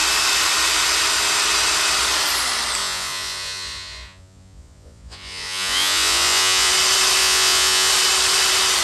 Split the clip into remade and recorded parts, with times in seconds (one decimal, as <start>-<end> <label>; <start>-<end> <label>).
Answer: 0.0-2.8 recorded; 2.8-6.7 remade; 6.7-7.2 recorded; 7.2-7.9 remade; 7.9-8.8 recorded